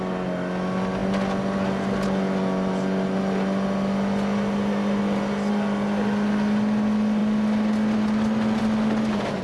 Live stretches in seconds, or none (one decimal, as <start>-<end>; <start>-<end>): 0.0-9.4